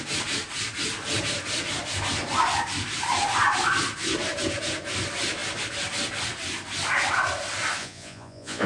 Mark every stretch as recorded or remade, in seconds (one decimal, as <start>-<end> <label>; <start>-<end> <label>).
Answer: 0.0-7.8 recorded; 7.8-8.7 remade